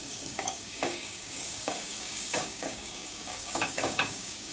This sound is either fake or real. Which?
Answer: fake